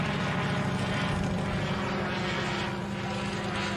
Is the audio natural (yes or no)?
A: yes